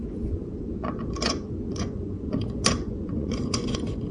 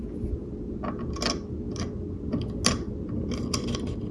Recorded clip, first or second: second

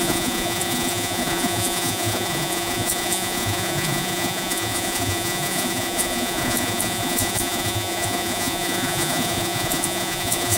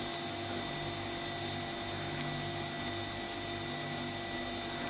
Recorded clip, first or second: second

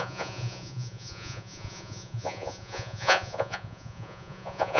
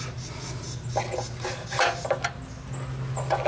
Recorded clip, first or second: second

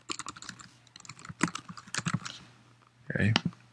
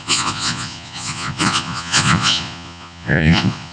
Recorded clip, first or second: first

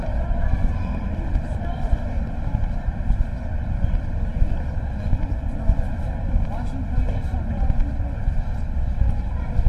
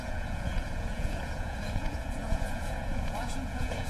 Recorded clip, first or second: first